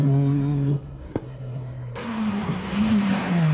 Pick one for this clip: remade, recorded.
remade